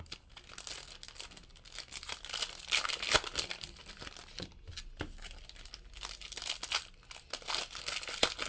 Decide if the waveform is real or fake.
real